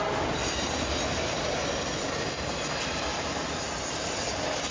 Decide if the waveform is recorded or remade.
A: recorded